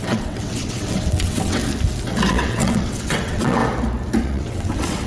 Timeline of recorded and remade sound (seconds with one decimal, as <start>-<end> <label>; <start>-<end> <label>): 0.0-1.6 remade; 1.6-2.3 recorded; 2.3-3.6 remade; 3.6-4.2 recorded; 4.2-5.1 remade

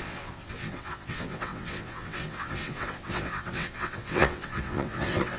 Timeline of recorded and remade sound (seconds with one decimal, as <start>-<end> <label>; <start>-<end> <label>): 0.0-5.4 remade

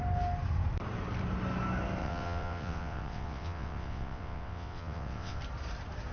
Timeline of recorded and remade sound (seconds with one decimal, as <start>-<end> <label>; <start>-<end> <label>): 0.0-2.0 recorded; 2.0-5.4 remade; 5.4-6.1 recorded

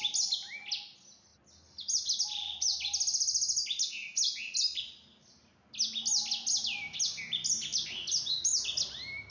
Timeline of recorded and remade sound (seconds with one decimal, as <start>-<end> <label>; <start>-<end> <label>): 0.0-9.3 recorded

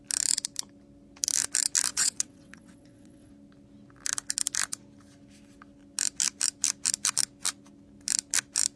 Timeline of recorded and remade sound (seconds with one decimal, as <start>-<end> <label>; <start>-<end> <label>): 0.0-1.9 recorded; 1.9-3.3 remade; 3.3-8.8 recorded

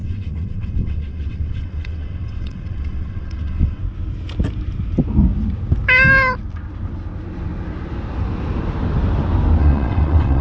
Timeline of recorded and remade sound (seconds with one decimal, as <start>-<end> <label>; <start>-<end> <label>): 0.0-3.8 remade; 3.8-9.6 recorded; 9.6-10.4 remade

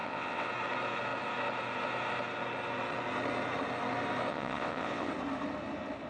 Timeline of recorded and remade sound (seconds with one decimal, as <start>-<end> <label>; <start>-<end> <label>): 0.0-0.5 remade; 0.5-4.3 recorded; 4.3-5.1 remade; 5.1-6.1 recorded